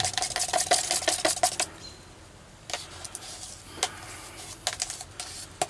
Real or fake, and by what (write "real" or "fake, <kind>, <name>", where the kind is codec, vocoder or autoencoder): real